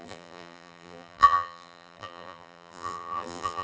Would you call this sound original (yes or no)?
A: no